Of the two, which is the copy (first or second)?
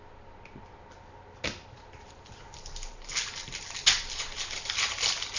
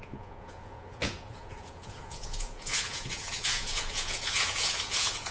second